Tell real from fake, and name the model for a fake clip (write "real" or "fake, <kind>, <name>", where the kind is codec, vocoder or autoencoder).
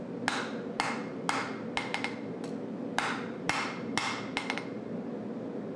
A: real